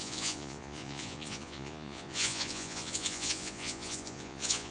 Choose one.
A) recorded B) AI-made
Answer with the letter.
B